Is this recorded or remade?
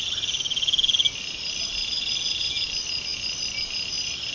recorded